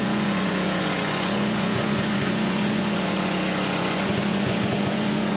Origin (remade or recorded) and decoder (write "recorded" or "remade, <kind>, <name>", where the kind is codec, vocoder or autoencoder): remade, vocoder, Vocos